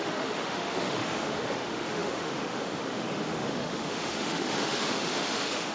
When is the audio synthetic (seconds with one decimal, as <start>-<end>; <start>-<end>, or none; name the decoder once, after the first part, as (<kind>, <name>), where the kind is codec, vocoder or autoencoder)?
0.0-5.7 (autoencoder, DAC-VAE)